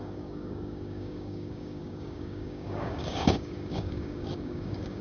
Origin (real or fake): fake